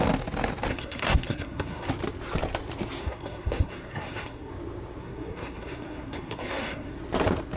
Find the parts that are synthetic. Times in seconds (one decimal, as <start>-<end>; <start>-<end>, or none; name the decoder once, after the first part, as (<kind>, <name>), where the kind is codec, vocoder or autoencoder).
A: 0.7-1.9 (codec, SNAC); 3.0-4.5; 5.0-7.0